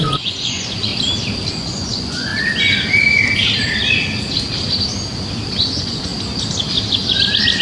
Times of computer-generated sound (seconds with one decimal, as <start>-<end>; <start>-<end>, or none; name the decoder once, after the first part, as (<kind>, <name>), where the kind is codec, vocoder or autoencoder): 0.0-0.9 (vocoder, Vocos); 1.5-2.3; 5.6-6.1